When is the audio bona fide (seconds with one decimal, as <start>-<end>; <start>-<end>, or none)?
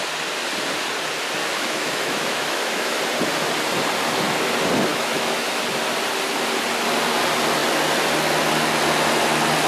0.0-1.4; 3.0-4.9; 5.6-9.7